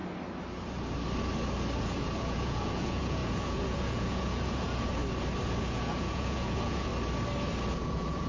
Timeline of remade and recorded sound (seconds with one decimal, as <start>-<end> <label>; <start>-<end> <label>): 0.0-1.8 recorded; 1.8-5.0 remade; 5.0-5.6 recorded; 5.6-6.9 remade; 6.9-7.7 recorded; 7.7-8.3 remade